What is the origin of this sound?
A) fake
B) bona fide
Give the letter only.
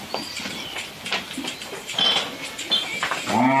B